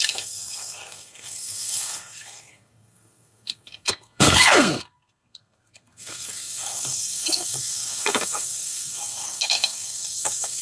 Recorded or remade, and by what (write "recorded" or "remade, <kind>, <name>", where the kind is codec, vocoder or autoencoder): remade, codec, SNAC